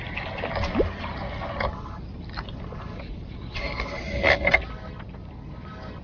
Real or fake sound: real